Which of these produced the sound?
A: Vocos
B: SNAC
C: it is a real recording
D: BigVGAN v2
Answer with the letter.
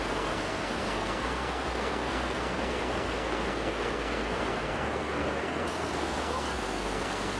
B